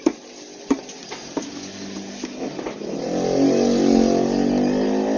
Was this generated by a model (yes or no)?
no